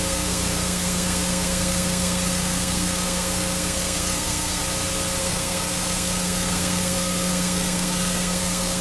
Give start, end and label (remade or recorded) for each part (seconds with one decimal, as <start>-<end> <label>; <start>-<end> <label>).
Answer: 0.0-4.6 remade; 4.6-5.2 recorded; 5.2-8.8 remade